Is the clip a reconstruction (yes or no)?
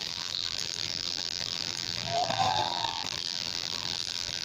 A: yes